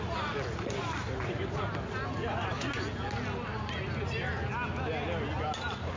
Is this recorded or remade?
recorded